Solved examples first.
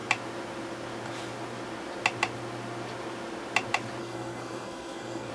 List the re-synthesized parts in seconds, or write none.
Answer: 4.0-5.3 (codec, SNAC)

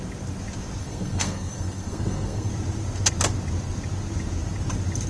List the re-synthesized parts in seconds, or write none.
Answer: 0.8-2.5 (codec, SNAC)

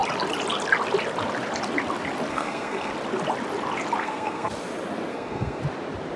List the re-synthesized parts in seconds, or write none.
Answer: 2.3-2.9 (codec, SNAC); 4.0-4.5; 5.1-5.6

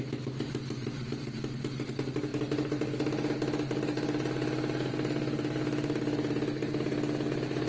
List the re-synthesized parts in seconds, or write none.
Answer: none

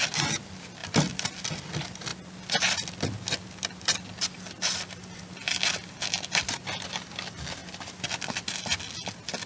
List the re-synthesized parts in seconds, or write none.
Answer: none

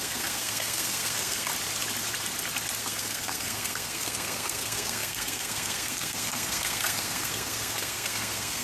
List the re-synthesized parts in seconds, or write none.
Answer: 0.0-1.5 (codec, SNAC); 2.8-8.6

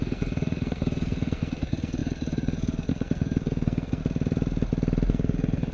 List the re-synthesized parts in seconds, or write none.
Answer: 0.0-4.0 (codec, SNAC); 5.1-5.7

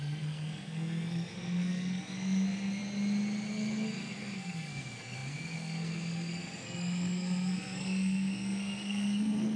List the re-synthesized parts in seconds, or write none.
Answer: 0.0-2.8 (codec, SNAC); 3.5-9.6